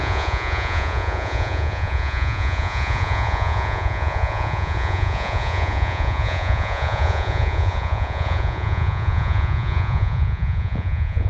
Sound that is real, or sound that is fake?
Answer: fake